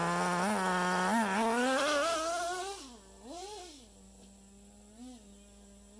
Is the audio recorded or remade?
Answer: recorded